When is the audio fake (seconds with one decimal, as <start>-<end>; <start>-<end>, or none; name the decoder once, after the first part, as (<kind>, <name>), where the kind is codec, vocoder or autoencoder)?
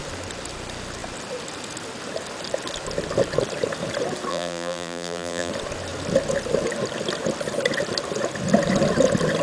4.3-5.5 (vocoder, BigVGAN v2)